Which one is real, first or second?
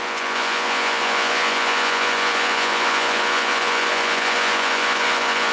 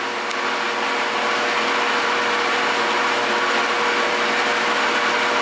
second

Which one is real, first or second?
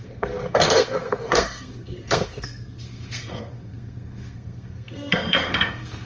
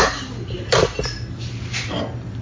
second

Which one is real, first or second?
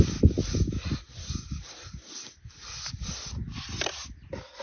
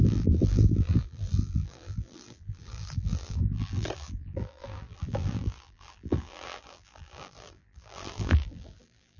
first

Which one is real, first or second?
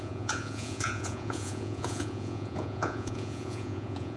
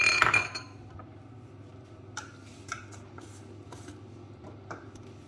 second